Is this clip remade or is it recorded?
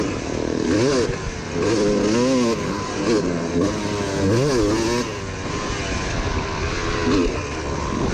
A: recorded